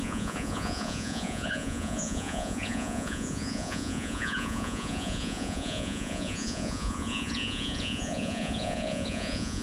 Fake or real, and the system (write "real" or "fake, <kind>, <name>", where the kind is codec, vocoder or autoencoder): fake, vocoder, Vocos